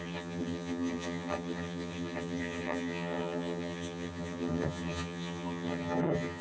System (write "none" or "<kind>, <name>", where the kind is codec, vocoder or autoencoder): vocoder, HiFi-GAN